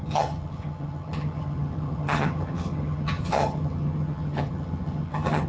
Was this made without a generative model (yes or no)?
no